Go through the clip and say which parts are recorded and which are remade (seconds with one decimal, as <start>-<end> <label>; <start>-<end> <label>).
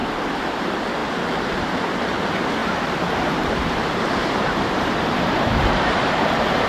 0.0-2.6 recorded; 2.6-6.7 remade